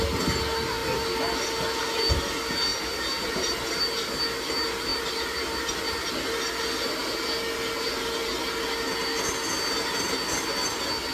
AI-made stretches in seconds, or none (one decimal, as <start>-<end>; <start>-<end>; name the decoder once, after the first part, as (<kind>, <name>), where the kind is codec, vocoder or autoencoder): none